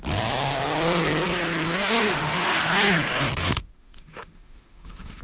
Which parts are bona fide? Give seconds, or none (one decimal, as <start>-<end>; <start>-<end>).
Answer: 0.0-2.0; 2.7-3.4